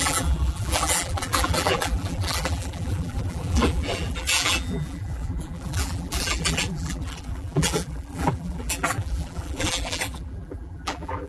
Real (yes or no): no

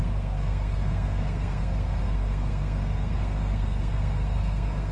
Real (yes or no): no